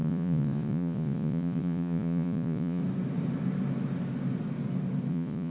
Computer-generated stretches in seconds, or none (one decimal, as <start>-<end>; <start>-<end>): 0.0-2.8; 5.1-5.5